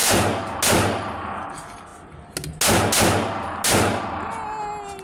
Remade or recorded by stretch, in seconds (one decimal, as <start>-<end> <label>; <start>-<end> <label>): 0.0-5.0 recorded